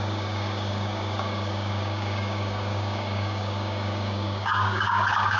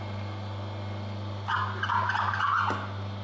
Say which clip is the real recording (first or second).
second